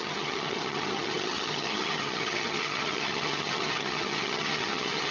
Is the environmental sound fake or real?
fake